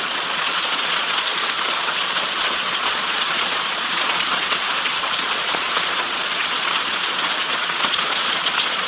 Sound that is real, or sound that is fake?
fake